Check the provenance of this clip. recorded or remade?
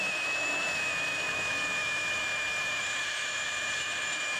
remade